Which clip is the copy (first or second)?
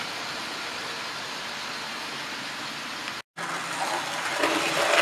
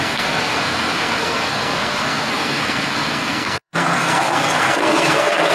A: second